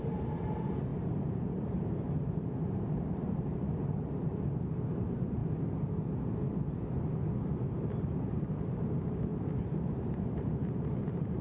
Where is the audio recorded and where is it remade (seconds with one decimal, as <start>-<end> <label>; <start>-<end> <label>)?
0.0-5.4 remade; 5.4-7.4 recorded; 7.4-9.3 remade; 9.3-9.9 recorded; 9.9-11.4 remade